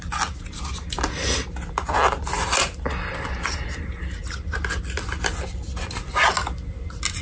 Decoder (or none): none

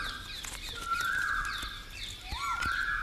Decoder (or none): none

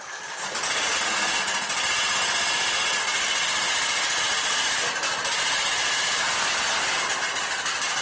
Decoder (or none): none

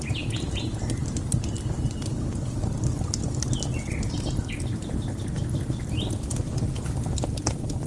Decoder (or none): none